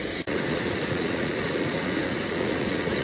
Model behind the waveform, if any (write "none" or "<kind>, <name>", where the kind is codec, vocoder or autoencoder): vocoder, Vocos